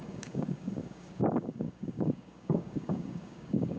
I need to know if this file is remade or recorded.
remade